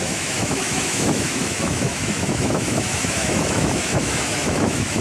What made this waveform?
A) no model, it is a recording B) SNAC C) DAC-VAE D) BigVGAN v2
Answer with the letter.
C